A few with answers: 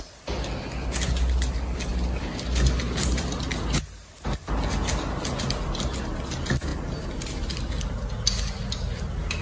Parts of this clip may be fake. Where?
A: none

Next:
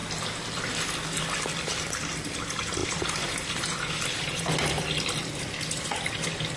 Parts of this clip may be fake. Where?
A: 2.8-4.5

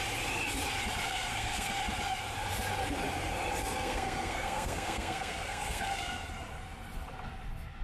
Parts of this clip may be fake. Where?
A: 1.0-1.8; 3.6-6.3